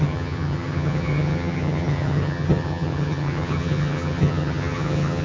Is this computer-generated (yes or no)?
yes